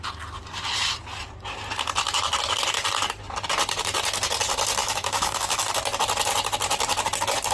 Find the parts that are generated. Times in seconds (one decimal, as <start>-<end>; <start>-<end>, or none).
4.8-5.6